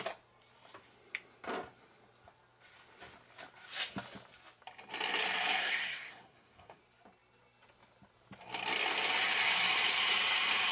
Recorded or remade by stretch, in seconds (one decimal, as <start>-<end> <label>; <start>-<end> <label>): 0.0-5.6 recorded; 5.6-6.8 remade; 6.8-10.7 recorded